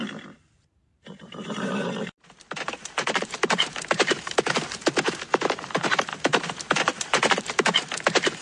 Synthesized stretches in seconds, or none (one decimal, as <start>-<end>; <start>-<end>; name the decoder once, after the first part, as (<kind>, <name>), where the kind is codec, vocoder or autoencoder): 0.0-8.4 (vocoder, BigVGAN v2)